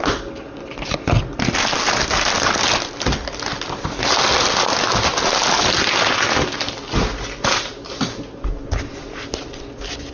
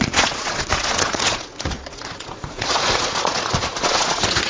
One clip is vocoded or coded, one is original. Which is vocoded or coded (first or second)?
second